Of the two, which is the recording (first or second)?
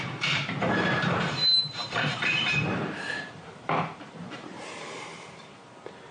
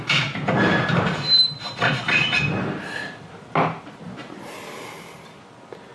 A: second